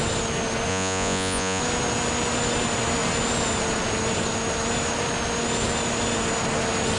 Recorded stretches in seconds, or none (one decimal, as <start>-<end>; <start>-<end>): 0.0-0.7; 1.6-7.0